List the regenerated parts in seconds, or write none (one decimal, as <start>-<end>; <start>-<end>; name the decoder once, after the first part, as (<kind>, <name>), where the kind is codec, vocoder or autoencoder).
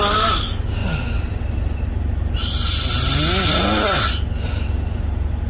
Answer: none